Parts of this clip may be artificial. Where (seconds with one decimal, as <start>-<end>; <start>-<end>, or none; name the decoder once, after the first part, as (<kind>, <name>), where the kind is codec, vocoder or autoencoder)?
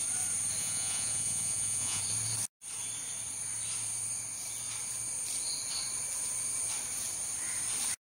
0.6-2.0 (vocoder, Vocos)